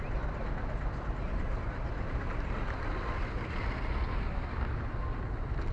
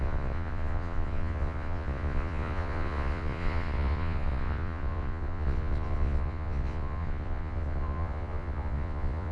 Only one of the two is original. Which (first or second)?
first